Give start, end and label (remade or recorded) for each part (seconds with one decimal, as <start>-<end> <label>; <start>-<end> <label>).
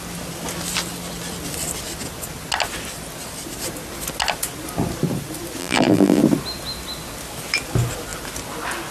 0.0-5.6 recorded; 5.6-6.2 remade; 6.2-8.9 recorded